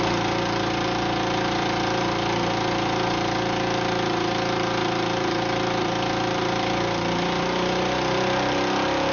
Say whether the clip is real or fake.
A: real